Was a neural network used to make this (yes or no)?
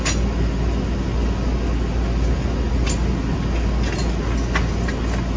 no